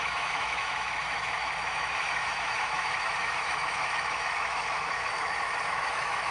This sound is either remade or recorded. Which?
remade